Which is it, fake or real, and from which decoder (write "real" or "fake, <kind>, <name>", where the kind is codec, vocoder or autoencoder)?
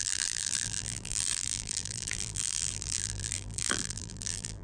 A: fake, vocoder, BigVGAN v2